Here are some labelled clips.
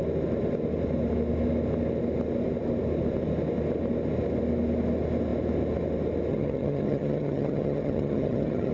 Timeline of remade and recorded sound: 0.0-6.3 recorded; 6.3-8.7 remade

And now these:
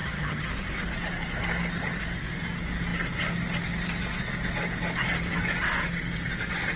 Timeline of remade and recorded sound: 0.0-0.5 remade; 0.5-6.8 recorded

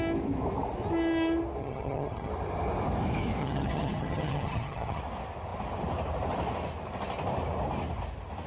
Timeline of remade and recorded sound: 0.0-1.6 recorded; 1.6-2.3 remade; 2.3-3.4 recorded; 3.4-5.0 remade; 5.0-8.5 recorded

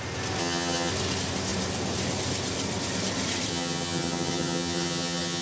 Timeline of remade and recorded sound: 0.0-0.4 recorded; 0.4-0.9 remade; 0.9-3.5 recorded; 3.5-5.4 remade

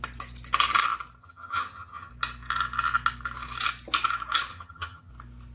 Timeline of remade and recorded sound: 0.0-1.2 recorded; 1.2-2.1 remade; 2.1-4.5 recorded; 4.5-5.1 remade; 5.1-5.5 recorded

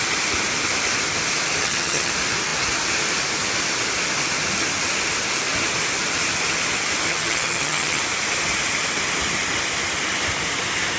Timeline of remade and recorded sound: 0.0-1.6 recorded; 1.6-2.1 remade; 2.1-7.1 recorded; 7.1-8.0 remade; 8.0-11.0 recorded

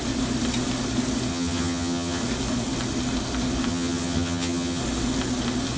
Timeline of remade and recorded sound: 0.0-1.3 recorded; 1.3-2.2 remade; 2.2-3.7 recorded; 3.7-4.8 remade; 4.8-5.8 recorded